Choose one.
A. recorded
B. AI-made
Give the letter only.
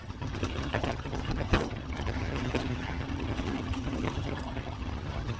B